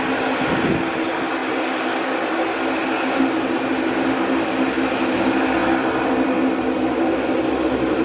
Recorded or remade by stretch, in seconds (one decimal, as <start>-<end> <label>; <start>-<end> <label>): 0.0-8.0 recorded